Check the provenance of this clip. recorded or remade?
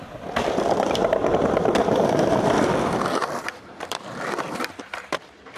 remade